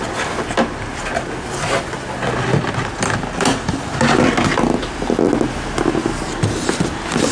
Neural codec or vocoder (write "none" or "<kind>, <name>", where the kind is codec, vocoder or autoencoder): none